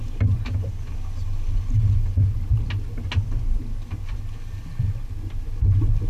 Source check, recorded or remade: recorded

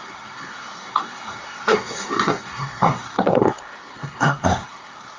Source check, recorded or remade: remade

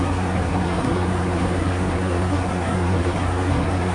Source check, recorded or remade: remade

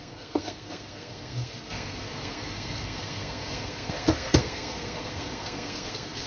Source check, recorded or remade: remade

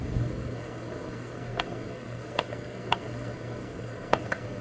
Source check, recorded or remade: remade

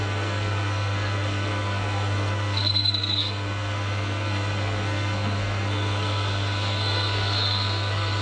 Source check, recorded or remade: remade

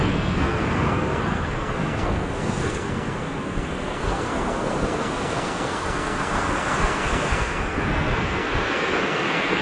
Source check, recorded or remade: remade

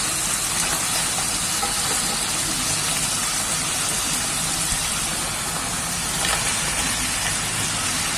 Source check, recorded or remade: recorded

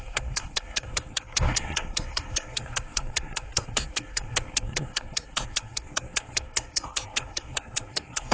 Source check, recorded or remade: remade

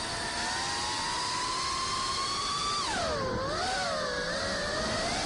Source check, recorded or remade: recorded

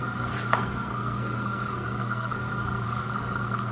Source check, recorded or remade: remade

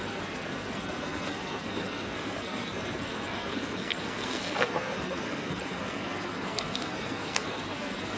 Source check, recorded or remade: remade